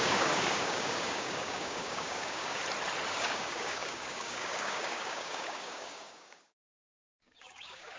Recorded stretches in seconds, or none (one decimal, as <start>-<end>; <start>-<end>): 2.6-3.1